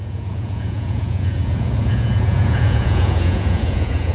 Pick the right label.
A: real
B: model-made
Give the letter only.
B